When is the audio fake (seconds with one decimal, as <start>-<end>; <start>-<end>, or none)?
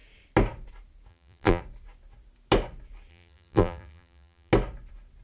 1.1-1.6; 3.1-4.5